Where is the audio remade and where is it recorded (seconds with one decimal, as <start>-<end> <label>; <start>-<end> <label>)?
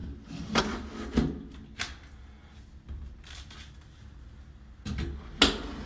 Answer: 0.0-0.6 remade; 0.6-2.4 recorded; 2.4-5.0 remade; 5.0-5.9 recorded